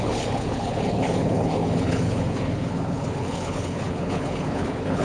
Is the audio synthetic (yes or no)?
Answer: yes